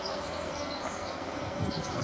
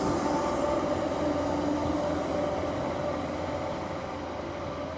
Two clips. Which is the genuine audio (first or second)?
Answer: second